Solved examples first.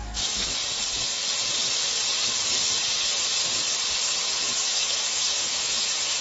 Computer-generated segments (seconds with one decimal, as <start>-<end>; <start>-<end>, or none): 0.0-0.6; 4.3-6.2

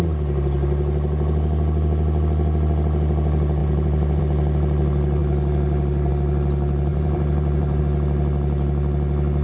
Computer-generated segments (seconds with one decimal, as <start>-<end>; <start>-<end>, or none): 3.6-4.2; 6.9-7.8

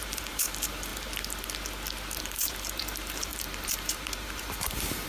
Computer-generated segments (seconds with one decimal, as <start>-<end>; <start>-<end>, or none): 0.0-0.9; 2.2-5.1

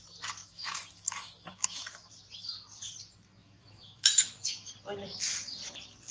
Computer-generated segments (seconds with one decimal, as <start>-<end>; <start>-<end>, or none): 0.4-2.1; 3.4-4.7

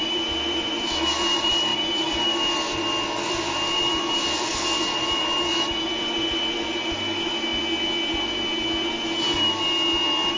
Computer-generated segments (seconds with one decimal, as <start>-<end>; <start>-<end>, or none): 0.0-7.5

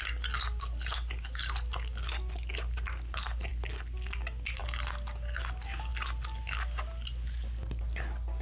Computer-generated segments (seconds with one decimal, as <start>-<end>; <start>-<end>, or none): none